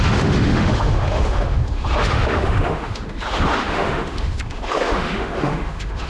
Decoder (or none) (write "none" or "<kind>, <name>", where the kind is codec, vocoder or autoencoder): autoencoder, DAC-VAE